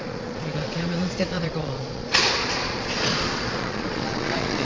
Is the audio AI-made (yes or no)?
yes